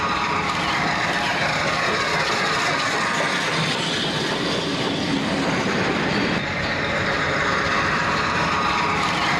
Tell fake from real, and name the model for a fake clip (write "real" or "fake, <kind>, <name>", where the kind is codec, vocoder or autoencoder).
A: real